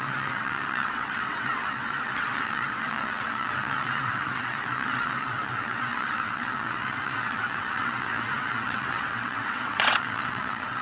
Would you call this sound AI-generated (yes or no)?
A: yes